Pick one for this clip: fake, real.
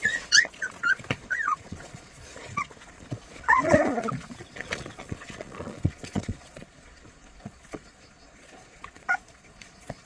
fake